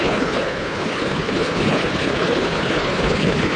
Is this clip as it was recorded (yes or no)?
no